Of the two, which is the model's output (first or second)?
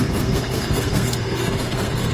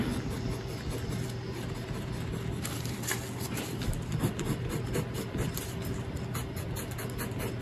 first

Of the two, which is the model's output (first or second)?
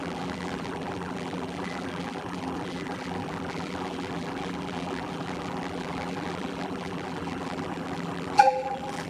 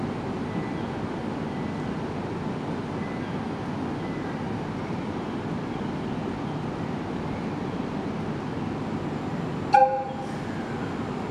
first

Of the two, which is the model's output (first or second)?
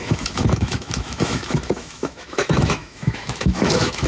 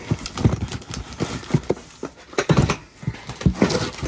first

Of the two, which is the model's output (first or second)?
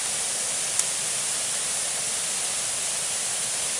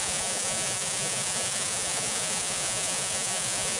second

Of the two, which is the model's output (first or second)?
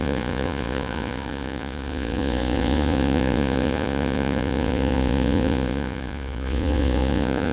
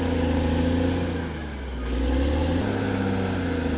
first